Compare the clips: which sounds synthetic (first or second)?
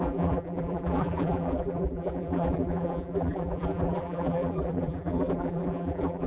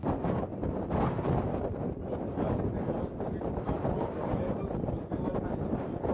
first